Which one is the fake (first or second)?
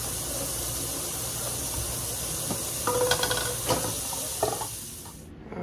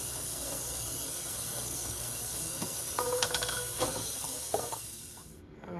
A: second